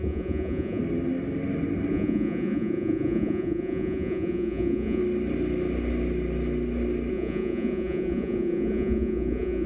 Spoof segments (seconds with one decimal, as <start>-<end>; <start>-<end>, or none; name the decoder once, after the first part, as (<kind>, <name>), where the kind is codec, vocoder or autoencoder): 0.0-0.8 (vocoder, Vocos); 1.9-5.0; 7.1-9.7